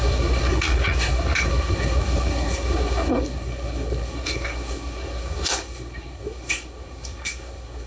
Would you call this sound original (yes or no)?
no